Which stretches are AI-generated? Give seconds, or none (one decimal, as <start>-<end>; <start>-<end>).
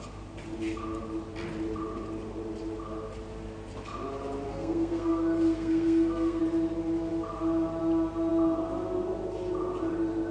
4.5-6.4